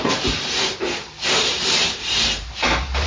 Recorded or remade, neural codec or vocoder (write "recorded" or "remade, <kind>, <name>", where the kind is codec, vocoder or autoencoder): remade, vocoder, BigVGAN v2